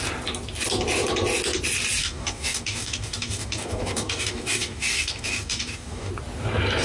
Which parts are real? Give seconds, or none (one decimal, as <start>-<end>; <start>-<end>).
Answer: 0.0-2.0; 6.1-6.8